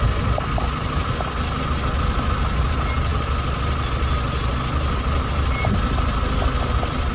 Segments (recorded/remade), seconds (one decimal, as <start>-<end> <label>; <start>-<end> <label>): 0.0-7.1 recorded